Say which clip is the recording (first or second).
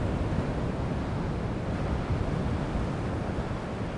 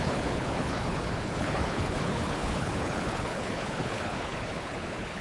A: first